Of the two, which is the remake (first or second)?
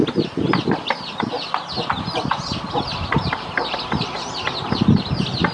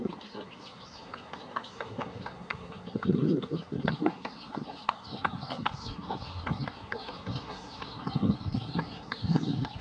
second